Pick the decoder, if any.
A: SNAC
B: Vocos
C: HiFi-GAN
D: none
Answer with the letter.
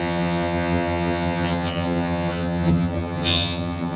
C